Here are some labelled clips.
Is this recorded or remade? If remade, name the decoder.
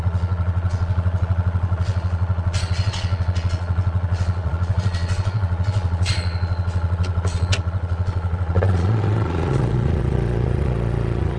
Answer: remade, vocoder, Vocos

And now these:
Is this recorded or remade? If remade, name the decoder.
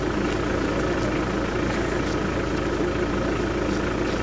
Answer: recorded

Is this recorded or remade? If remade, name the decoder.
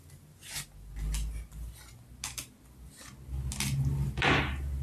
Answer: recorded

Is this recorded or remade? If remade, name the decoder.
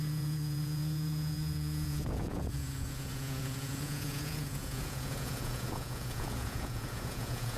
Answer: remade, vocoder, Vocos